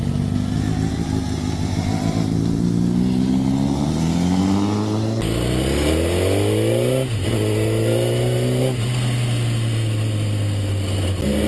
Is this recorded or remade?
recorded